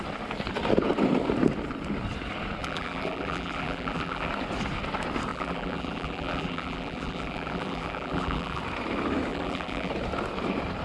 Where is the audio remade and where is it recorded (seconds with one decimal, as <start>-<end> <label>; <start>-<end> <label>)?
0.0-2.6 recorded; 2.6-4.3 remade; 4.3-5.3 recorded; 5.3-8.6 remade; 8.6-9.3 recorded; 9.3-9.9 remade; 9.9-10.8 recorded